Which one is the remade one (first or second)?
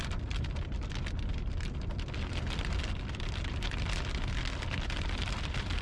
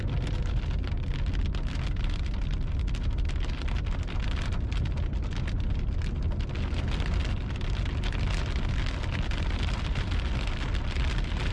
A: first